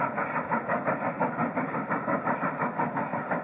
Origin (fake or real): real